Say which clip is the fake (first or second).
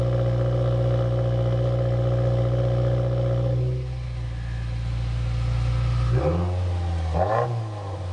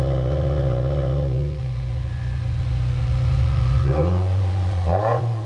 second